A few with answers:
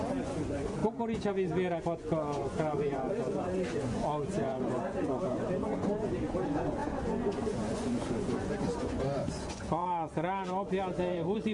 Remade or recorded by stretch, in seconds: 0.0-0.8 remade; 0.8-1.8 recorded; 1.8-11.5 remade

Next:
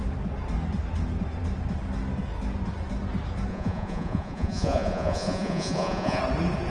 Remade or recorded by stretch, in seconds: 0.0-3.5 recorded; 3.5-6.2 remade; 6.2-6.7 recorded

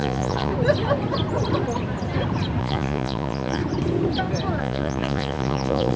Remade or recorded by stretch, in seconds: 0.0-0.5 remade; 0.5-2.6 recorded; 2.6-3.6 remade; 3.6-4.6 recorded; 4.6-6.0 remade

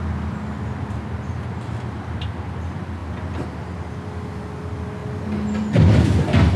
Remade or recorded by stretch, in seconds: 0.0-6.6 recorded

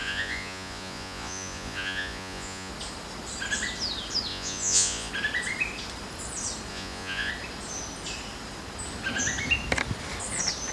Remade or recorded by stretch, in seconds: 0.0-2.7 remade; 2.7-4.3 recorded; 4.3-5.1 remade; 5.1-6.7 recorded; 6.7-7.3 remade; 7.3-10.7 recorded